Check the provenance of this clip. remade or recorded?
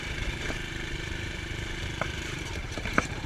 remade